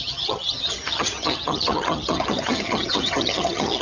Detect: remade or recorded remade